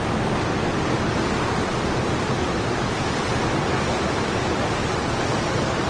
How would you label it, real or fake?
real